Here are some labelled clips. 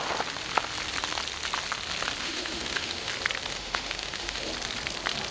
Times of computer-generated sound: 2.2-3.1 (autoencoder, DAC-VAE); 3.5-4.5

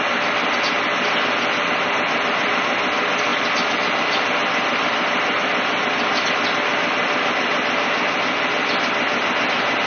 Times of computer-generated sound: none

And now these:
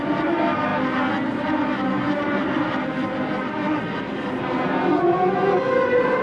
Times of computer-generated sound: none